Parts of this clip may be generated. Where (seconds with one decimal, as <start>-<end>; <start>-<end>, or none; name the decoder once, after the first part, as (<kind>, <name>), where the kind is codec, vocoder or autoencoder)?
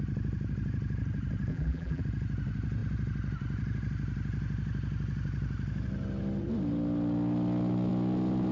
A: 1.5-2.0 (vocoder, BigVGAN v2)